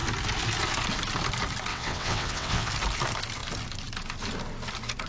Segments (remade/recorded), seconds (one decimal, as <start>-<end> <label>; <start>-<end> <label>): 0.0-1.7 recorded; 1.7-2.7 remade; 2.7-5.1 recorded